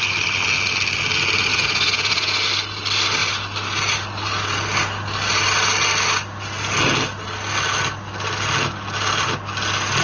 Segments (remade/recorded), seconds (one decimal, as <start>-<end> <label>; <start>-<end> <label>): 0.0-1.5 recorded; 1.5-2.4 remade; 2.4-10.0 recorded